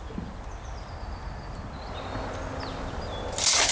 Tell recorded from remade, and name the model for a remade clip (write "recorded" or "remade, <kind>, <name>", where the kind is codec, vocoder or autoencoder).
recorded